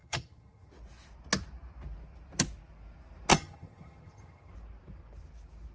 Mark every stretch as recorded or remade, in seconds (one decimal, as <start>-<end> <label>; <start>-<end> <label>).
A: 0.0-0.7 remade; 0.7-3.3 recorded; 3.3-4.5 remade; 4.5-5.7 recorded